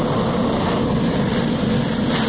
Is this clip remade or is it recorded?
recorded